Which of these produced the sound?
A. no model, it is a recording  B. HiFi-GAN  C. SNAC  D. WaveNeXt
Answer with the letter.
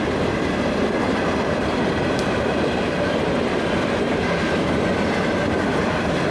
A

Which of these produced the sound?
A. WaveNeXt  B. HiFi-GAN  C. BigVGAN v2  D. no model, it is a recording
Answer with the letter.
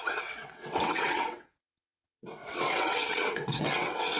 A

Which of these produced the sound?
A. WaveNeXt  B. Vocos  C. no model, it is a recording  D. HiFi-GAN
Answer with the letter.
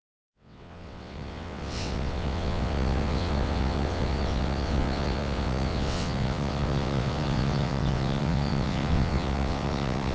A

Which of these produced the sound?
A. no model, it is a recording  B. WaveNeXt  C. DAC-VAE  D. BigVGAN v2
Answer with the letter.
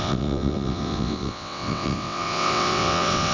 B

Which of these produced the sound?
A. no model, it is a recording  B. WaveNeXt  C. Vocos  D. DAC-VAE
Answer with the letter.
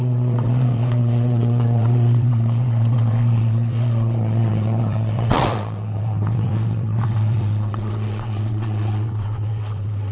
B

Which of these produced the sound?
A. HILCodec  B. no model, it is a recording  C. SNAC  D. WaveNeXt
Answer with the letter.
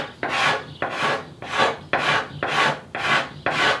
B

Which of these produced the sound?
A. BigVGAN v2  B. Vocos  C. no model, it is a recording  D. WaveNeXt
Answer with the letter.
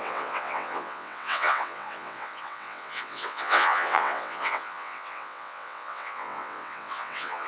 D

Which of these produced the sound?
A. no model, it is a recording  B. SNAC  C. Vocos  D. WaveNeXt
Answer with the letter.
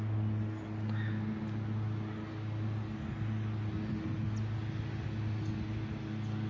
A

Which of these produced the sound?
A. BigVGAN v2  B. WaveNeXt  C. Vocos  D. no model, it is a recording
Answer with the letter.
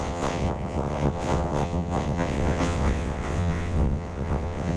B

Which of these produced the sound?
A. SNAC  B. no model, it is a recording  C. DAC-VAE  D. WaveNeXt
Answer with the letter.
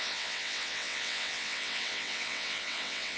D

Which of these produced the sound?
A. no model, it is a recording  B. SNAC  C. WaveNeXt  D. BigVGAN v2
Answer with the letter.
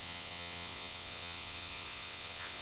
C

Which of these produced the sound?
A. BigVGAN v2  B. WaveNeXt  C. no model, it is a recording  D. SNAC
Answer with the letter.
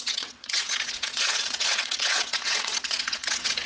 B